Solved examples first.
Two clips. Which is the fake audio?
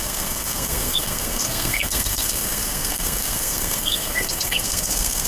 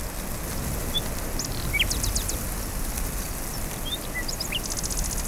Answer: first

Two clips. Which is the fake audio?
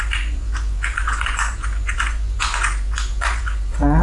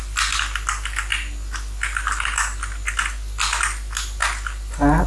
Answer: first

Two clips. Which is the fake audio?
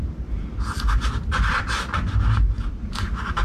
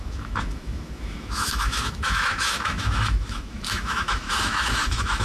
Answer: second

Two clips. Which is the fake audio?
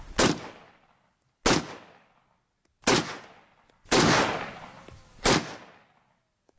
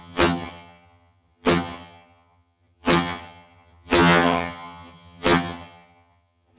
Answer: second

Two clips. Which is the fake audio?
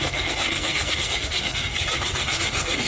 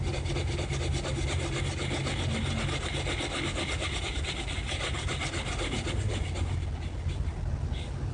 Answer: first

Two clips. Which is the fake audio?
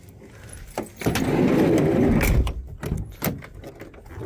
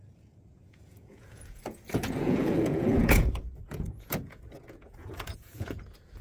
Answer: second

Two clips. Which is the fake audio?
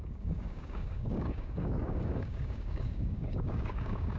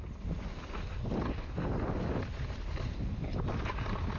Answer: first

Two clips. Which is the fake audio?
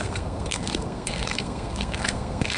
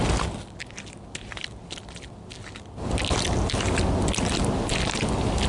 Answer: first